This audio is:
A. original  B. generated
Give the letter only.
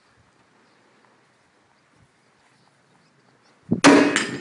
A